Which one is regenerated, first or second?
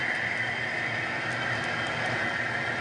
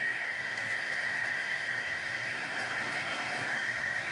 second